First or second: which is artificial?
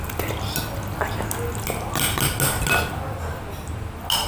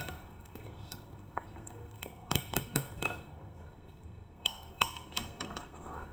second